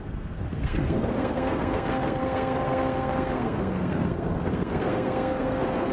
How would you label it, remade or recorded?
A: remade